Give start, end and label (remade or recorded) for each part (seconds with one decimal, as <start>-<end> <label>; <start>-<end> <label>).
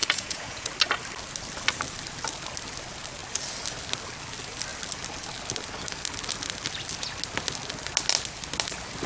0.0-0.7 remade; 0.7-9.1 recorded